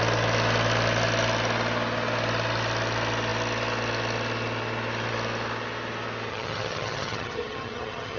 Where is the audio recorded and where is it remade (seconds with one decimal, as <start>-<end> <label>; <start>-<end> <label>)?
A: 0.0-6.3 recorded; 6.3-8.2 remade